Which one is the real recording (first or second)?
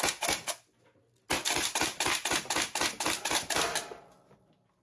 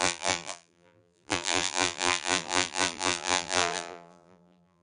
first